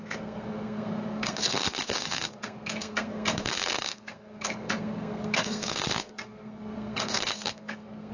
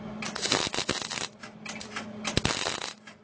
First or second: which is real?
second